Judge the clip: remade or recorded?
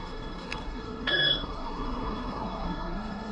remade